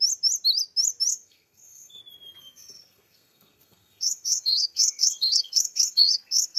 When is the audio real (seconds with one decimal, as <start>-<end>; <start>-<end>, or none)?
0.0-1.1; 2.0-2.4